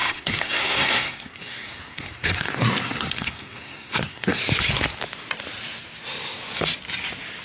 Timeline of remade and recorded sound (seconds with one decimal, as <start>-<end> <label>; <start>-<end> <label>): 0.0-4.4 remade; 4.4-7.4 recorded